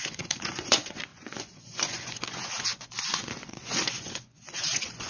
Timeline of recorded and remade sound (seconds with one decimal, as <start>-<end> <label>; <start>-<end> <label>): 0.0-5.1 remade